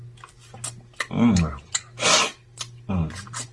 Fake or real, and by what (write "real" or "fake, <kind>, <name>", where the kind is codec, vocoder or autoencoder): real